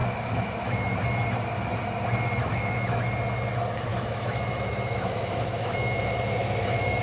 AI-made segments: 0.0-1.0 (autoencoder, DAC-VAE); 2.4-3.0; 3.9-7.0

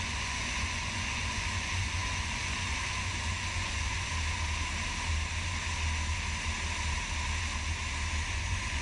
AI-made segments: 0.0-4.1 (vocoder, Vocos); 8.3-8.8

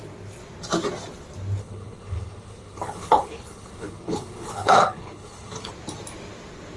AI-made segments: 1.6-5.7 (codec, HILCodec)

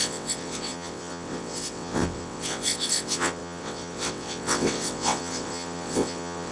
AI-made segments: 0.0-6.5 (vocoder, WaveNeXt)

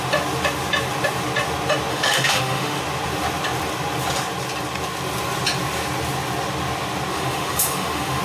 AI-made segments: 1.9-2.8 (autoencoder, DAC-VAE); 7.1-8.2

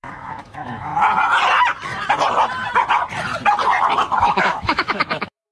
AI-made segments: 0.0-0.9 (autoencoder, DAC-VAE); 4.2-5.5

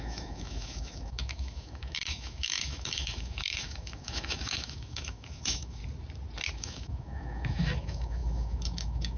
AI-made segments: 0.0-5.8 (autoencoder, DAC-VAE); 6.5-9.2